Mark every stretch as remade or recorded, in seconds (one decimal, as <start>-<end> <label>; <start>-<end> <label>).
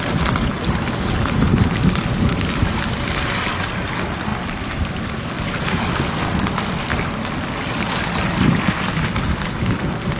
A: 0.0-10.2 recorded